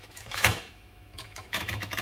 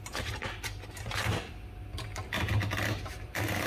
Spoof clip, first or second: first